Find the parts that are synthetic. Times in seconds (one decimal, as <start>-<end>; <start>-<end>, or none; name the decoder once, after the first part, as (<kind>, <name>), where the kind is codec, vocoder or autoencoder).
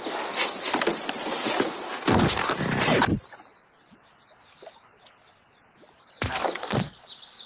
6.4-7.5 (vocoder, Vocos)